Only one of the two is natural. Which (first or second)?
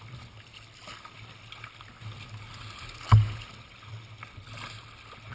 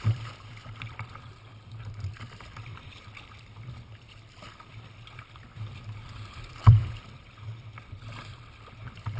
first